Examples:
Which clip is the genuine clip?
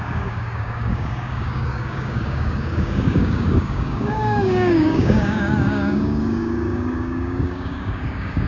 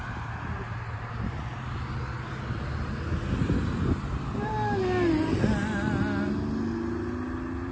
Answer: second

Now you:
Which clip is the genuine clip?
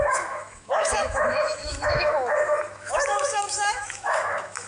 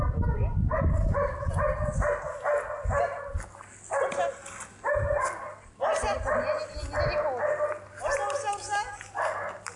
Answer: second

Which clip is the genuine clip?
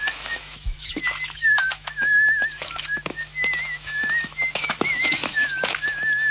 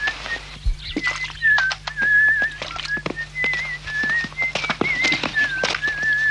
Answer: second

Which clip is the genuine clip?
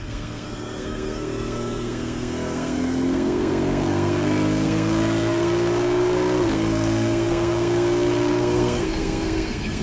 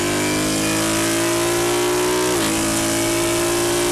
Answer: second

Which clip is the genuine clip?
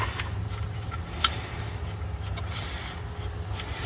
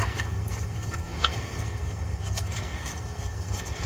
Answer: first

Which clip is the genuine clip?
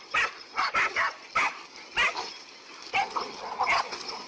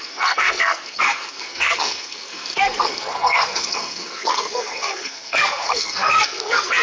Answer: first